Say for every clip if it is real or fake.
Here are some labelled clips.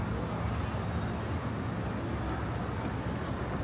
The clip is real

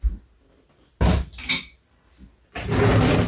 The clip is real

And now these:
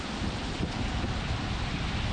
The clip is real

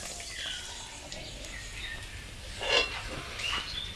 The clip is real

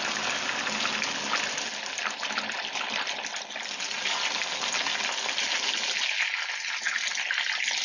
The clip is real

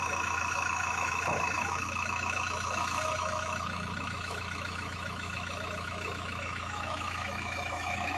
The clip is fake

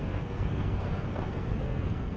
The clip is fake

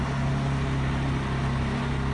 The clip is real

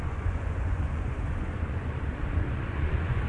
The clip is fake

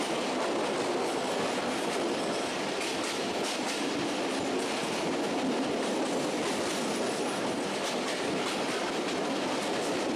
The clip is real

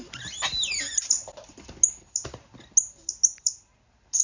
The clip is real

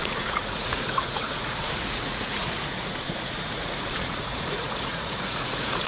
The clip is fake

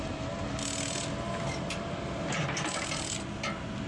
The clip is real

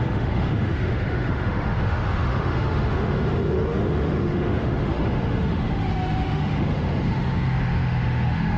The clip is fake